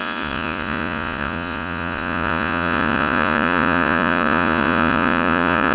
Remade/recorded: remade